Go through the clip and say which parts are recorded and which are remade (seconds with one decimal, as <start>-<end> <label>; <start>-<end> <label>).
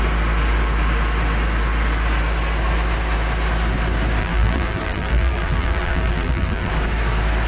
0.0-4.2 recorded; 4.2-6.7 remade; 6.7-7.5 recorded